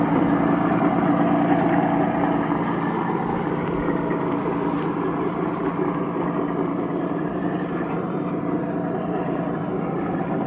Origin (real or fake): real